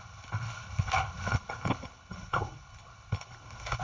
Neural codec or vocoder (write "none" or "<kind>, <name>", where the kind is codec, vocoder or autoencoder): codec, HILCodec